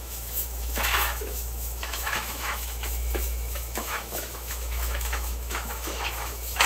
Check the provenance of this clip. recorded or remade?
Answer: remade